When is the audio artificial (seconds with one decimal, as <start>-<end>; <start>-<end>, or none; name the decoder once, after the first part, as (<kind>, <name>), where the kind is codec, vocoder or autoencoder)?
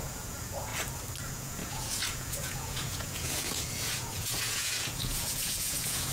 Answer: 0.0-0.7 (vocoder, Vocos); 1.2-6.1